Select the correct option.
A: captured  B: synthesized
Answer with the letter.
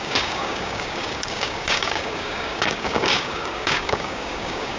B